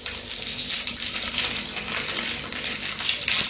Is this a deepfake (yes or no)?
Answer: no